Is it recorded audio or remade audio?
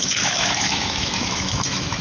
remade